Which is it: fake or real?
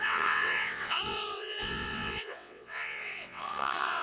fake